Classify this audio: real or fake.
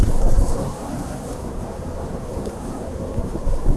fake